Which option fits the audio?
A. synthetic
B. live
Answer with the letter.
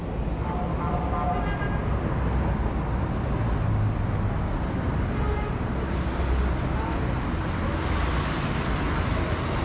B